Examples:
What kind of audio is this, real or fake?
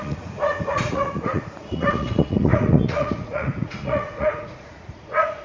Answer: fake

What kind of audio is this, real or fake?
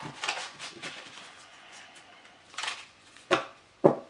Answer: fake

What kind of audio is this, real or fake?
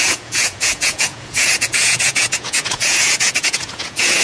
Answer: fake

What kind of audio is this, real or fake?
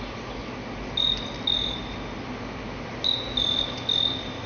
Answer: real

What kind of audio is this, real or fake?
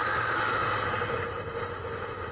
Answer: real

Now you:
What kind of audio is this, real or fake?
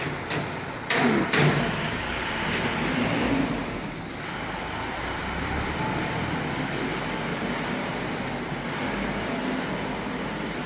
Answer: real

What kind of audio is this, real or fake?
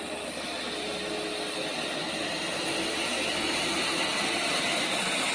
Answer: real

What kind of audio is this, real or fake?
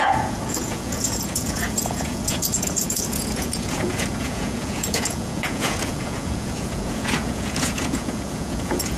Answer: fake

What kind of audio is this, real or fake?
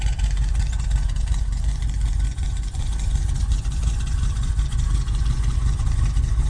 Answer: fake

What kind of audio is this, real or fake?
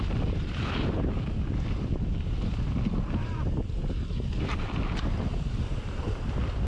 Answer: real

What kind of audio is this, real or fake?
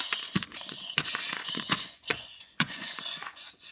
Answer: fake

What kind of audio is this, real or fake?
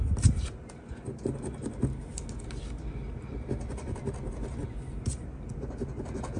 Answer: real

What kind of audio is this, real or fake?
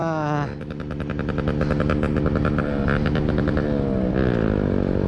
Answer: real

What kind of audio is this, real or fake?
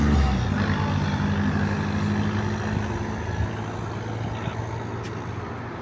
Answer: real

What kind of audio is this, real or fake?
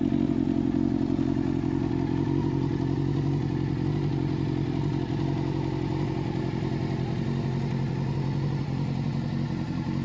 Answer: real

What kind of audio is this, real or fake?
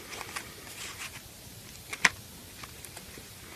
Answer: real